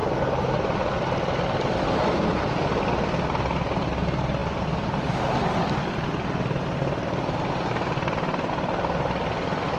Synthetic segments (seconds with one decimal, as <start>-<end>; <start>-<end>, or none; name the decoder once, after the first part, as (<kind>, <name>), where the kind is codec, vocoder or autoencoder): none